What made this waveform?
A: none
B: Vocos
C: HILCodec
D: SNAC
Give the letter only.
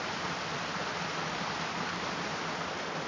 A